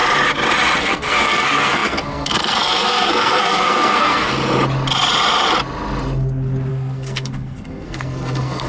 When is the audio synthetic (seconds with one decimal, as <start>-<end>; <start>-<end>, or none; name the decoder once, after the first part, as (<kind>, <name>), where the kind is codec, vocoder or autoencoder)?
0.8-4.3 (codec, SNAC); 6.7-8.7

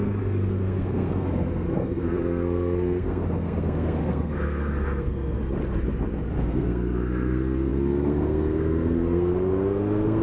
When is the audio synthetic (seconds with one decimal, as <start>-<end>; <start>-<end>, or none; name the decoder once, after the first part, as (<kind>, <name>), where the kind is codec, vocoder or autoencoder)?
0.0-5.4 (codec, SNAC); 6.4-10.2

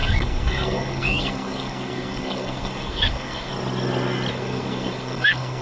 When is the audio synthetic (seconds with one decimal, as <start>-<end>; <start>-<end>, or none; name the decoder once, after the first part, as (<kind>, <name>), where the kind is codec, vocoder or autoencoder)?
0.0-3.5 (codec, SNAC); 4.3-5.6

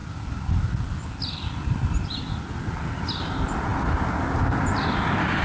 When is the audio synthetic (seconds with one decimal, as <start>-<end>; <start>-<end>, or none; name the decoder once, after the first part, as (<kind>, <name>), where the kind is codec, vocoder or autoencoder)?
none

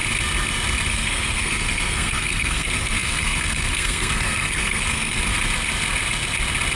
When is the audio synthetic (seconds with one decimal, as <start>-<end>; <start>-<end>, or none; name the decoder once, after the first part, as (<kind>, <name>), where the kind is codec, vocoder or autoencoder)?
0.9-5.3 (codec, SNAC)

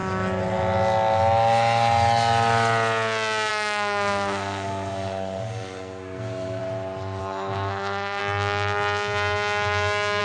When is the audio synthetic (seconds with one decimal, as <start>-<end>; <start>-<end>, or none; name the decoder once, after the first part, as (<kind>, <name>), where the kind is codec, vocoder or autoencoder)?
3.5-6.6 (codec, SNAC); 7.2-8.2

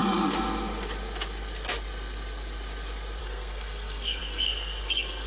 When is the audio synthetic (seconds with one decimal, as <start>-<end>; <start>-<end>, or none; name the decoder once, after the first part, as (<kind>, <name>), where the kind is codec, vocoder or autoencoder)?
3.2-5.3 (codec, SNAC)